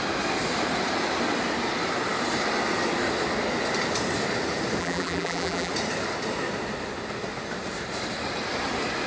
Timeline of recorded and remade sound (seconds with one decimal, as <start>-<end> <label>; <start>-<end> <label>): 0.0-4.8 recorded; 4.8-5.7 remade; 5.7-9.1 recorded